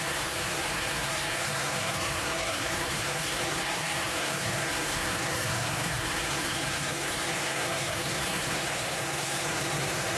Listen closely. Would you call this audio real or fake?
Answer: fake